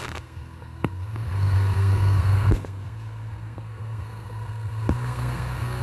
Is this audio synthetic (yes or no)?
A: yes